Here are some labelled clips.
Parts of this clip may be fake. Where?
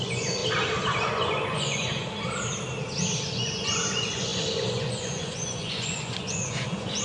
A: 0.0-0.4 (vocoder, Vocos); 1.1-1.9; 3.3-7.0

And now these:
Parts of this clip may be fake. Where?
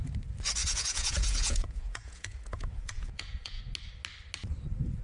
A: 0.6-3.6 (vocoder, Vocos)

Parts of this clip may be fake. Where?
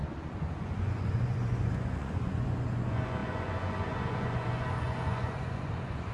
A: 0.0-6.1 (vocoder, Vocos)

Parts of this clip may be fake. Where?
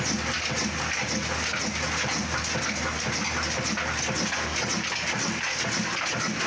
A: none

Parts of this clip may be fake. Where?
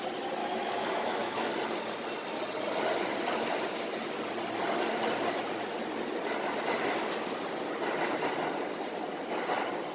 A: 0.4-1.5 (autoencoder, DAC-VAE)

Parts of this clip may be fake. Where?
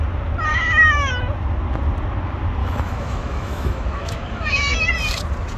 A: 0.5-1.1 (autoencoder, DAC-VAE); 2.6-4.9